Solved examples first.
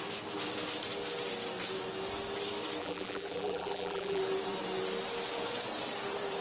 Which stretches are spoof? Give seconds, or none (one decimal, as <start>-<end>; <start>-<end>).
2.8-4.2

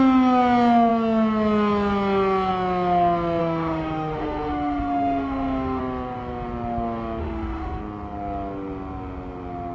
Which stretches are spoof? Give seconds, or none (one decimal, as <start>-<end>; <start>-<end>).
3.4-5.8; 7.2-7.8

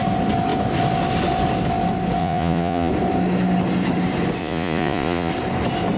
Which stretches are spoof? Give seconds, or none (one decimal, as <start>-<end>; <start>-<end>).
2.2-2.9; 4.4-5.3

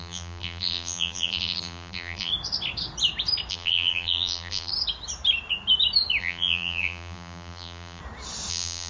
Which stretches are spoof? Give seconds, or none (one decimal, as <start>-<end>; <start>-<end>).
0.0-2.3; 3.5-4.7; 6.2-8.0; 8.5-8.9